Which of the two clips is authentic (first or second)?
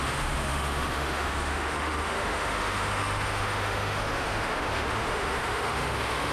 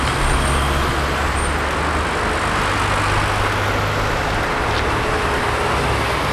second